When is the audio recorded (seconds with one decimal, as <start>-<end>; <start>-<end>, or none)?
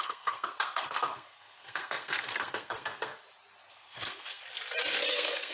3.1-3.7; 4.4-5.1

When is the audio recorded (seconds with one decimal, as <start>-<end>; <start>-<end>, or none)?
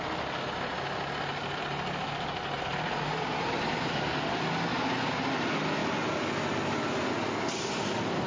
0.0-8.3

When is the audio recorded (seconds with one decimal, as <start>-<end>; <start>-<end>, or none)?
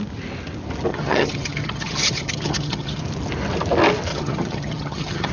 0.0-0.9; 3.0-4.1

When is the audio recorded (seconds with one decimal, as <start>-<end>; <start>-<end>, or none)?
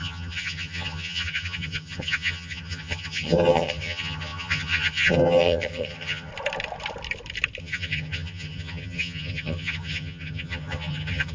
6.3-7.6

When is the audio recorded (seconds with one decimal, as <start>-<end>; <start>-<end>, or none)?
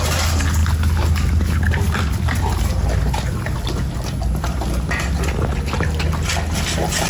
0.0-7.1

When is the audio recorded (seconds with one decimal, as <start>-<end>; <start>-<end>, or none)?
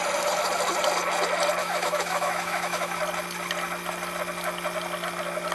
0.0-1.6; 3.0-5.5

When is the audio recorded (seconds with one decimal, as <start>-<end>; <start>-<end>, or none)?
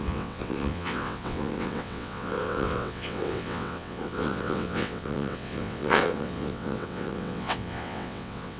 none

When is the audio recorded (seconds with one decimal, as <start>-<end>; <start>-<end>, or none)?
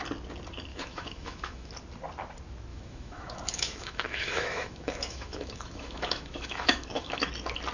0.0-0.7; 1.7-2.7; 7.3-7.7